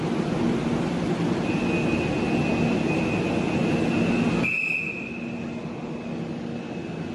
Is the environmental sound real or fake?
real